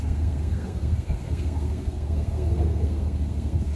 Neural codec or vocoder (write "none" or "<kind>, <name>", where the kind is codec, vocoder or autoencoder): codec, SNAC